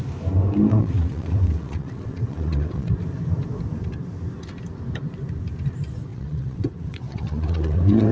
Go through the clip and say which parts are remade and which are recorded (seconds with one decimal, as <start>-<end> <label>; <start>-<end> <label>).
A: 0.0-0.7 recorded; 0.7-2.9 remade; 2.9-6.1 recorded; 6.1-8.1 remade

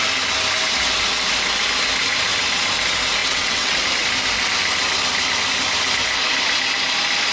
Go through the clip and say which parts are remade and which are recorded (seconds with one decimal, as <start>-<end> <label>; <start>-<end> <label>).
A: 0.0-3.2 recorded; 3.2-3.8 remade; 3.8-7.3 recorded